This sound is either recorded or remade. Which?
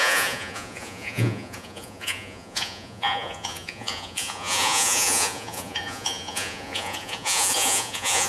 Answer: remade